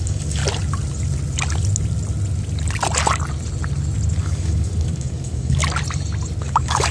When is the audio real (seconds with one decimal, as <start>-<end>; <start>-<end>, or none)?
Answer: 0.4-4.2; 5.6-6.4